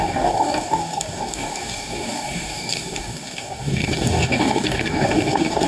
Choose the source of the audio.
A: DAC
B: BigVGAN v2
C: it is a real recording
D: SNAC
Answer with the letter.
A